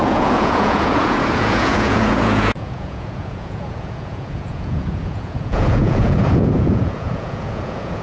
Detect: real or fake fake